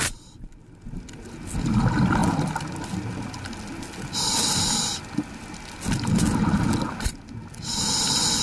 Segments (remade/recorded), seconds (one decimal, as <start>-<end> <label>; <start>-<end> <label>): 0.0-8.4 recorded